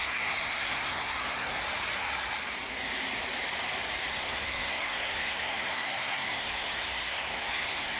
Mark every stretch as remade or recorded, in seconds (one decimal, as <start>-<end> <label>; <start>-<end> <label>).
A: 0.0-1.6 remade; 1.6-4.1 recorded; 4.1-8.0 remade